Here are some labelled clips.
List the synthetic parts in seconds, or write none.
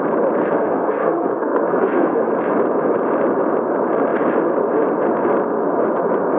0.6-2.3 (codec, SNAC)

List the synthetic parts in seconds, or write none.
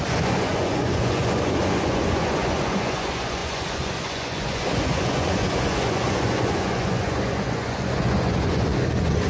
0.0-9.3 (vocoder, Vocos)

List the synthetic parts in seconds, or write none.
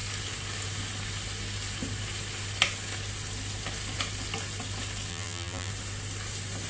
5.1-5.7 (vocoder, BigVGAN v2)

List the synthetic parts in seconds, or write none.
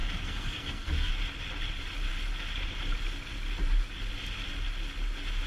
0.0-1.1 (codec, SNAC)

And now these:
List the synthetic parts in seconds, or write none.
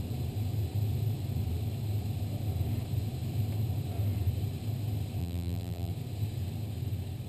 5.2-5.9 (vocoder, BigVGAN v2)